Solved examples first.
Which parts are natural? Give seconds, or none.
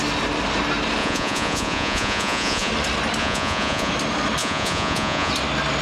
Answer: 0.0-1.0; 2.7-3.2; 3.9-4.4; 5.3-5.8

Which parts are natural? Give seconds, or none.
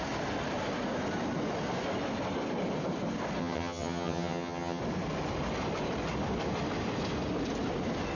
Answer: 0.0-3.4; 4.8-8.1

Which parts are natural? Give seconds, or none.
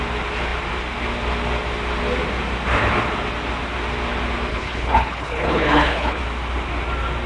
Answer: 0.0-4.5; 6.2-7.3